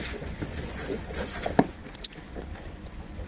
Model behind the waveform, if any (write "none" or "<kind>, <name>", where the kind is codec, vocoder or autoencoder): vocoder, Vocos